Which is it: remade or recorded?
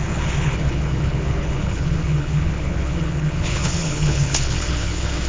remade